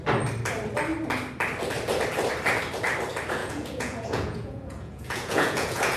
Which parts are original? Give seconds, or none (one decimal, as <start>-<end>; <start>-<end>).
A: 0.0-3.4